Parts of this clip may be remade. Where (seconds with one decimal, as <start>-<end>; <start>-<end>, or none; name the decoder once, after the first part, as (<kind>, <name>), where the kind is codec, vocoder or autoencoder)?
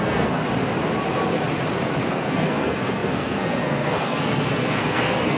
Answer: 0.0-0.4 (codec, SNAC); 2.1-5.4